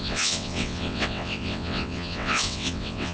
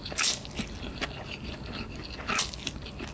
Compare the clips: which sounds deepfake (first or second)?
first